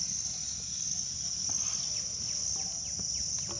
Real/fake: real